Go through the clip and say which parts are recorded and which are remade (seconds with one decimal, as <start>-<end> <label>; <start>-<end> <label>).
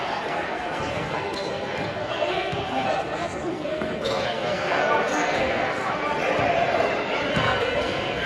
0.0-6.0 remade; 6.0-7.3 recorded; 7.3-8.3 remade